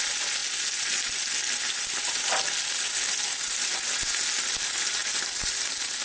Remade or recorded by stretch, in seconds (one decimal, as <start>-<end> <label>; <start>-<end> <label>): 0.0-6.0 recorded